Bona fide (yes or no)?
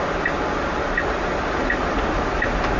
yes